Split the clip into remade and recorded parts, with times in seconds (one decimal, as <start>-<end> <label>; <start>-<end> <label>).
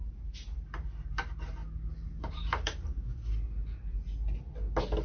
0.0-1.6 remade; 1.6-2.3 recorded; 2.3-3.1 remade; 3.1-5.0 recorded